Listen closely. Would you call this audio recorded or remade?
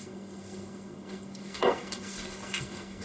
remade